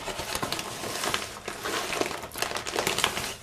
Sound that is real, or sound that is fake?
real